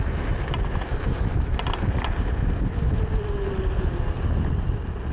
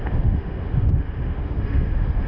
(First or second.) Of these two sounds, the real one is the first